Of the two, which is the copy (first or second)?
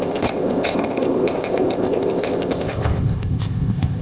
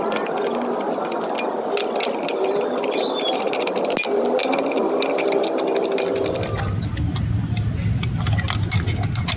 first